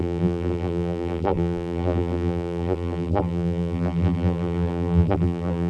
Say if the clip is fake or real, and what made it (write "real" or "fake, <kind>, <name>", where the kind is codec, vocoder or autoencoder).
fake, vocoder, BigVGAN v2